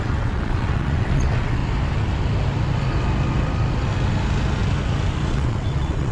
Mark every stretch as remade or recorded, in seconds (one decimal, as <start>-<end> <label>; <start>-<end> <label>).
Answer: 0.0-1.6 remade; 1.6-5.3 recorded; 5.3-6.1 remade